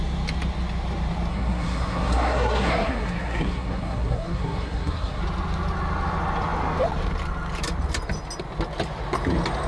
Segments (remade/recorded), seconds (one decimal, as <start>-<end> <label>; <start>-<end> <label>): 0.0-1.3 recorded; 1.3-5.2 remade; 5.2-9.7 recorded